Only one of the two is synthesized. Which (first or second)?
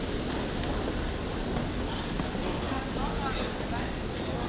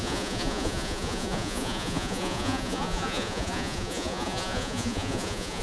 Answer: second